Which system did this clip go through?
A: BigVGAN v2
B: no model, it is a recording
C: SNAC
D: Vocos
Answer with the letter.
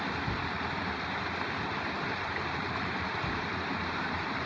A